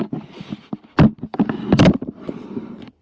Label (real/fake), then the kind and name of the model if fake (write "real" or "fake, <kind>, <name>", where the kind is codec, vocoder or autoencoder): real